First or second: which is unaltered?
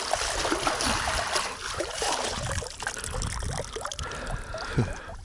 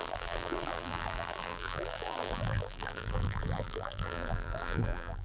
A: first